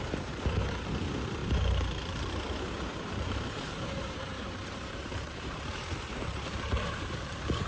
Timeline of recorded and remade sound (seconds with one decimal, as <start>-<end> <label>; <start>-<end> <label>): 0.0-1.4 recorded; 1.4-2.4 remade; 2.4-2.9 recorded; 2.9-7.7 remade